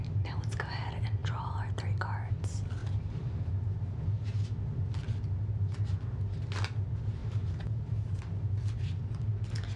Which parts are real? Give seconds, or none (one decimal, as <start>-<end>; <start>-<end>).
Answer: 0.0-1.2; 2.3-2.8; 3.5-7.2; 8.2-9.8